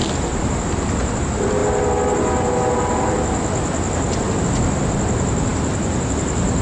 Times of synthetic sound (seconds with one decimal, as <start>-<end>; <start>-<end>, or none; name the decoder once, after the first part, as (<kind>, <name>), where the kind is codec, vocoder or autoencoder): none